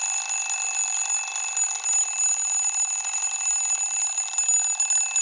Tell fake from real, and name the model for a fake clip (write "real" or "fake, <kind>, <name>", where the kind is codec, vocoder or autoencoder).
real